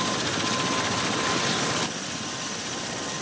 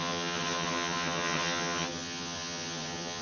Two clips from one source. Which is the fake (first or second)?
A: second